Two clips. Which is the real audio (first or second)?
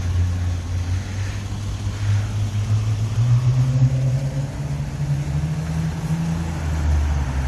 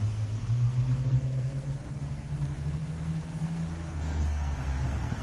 first